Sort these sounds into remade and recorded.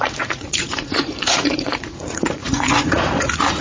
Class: remade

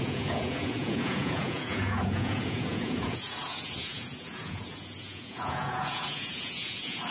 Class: remade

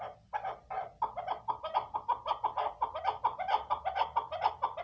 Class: recorded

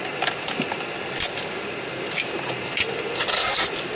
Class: recorded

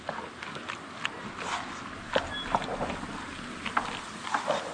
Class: recorded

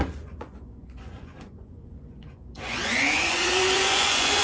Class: remade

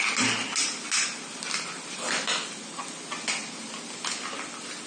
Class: recorded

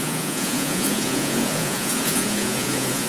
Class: remade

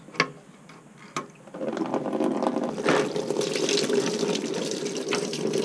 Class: recorded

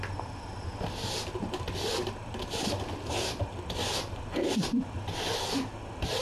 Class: recorded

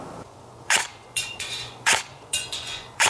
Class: remade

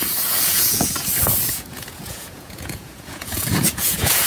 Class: remade